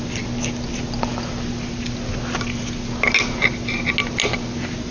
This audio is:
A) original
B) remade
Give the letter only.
A